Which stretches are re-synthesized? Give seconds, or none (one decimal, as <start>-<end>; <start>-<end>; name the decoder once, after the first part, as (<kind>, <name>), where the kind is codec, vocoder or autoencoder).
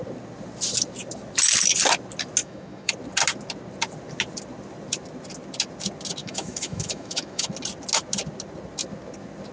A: 2.4-2.9 (autoencoder, DAC-VAE); 6.2-7.5